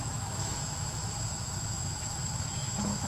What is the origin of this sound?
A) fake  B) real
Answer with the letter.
A